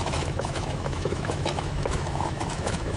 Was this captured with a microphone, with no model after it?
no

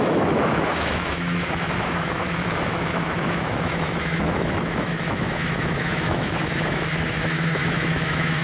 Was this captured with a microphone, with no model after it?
no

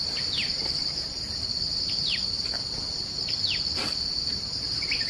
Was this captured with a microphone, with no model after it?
no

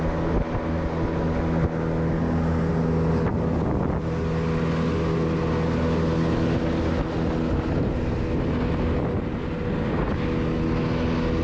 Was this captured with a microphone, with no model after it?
yes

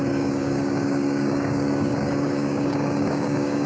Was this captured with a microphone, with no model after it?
no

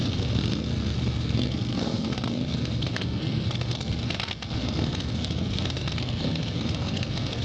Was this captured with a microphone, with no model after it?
no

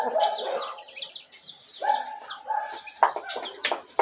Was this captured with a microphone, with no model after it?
yes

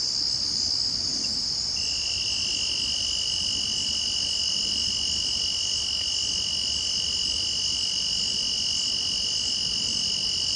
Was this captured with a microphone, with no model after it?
yes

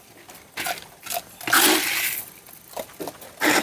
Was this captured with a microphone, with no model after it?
yes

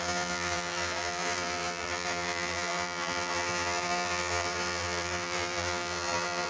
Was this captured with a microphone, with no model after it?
no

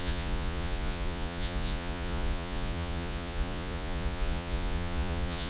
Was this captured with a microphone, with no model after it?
no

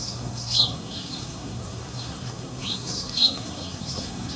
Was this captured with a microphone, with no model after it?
no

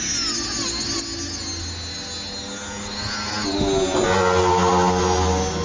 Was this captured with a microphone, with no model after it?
yes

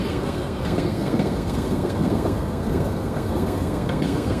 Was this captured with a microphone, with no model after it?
no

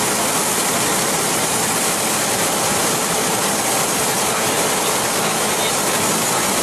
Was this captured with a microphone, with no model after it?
yes